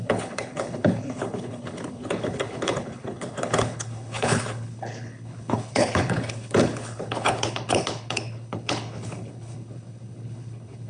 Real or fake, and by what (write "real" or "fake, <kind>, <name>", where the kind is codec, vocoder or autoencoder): fake, codec, HILCodec